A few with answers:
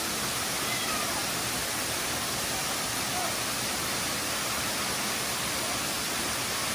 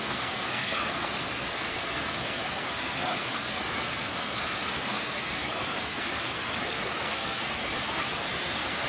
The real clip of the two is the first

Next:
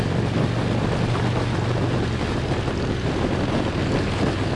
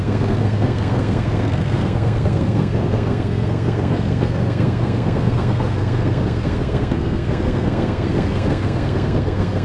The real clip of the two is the first